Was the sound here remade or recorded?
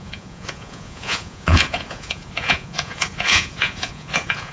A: remade